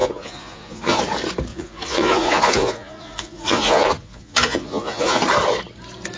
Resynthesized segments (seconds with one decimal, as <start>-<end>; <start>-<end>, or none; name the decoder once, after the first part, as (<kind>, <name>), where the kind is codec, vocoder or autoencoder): 0.0-1.0 (vocoder, Vocos); 1.5-5.2